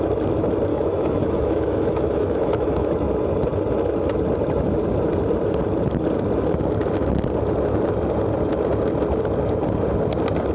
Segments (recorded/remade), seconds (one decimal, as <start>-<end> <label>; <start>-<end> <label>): 0.0-0.7 recorded; 0.7-2.9 remade; 2.9-10.5 recorded